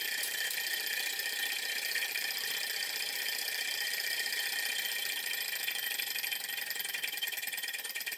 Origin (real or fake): fake